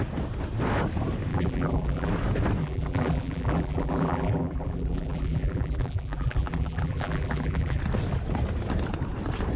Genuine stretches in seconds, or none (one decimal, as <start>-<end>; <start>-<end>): 0.0-1.3; 2.1-2.6; 7.8-9.6